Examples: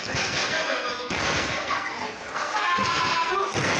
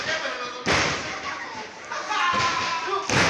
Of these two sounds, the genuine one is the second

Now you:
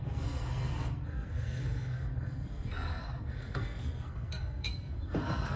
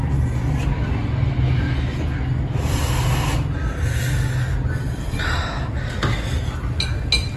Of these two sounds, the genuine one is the second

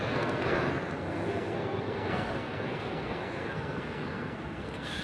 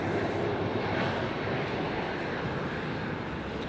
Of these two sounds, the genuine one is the second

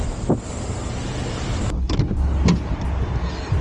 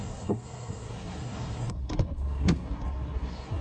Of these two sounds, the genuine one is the first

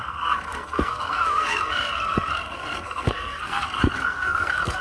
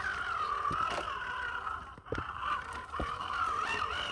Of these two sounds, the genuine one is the second